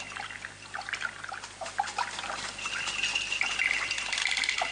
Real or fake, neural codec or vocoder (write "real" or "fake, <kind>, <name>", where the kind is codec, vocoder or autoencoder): real